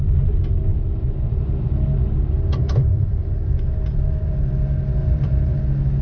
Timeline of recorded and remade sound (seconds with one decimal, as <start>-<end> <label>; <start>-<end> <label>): 0.0-0.7 recorded; 0.7-4.3 remade; 4.3-5.0 recorded; 5.0-5.6 remade; 5.6-6.0 recorded